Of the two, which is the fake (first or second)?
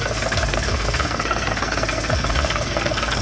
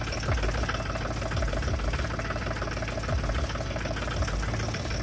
first